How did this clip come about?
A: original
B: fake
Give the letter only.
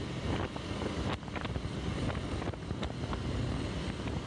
A